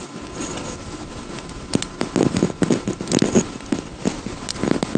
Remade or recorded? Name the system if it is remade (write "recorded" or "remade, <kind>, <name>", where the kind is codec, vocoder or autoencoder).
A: recorded